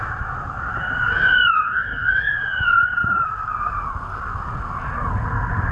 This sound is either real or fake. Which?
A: real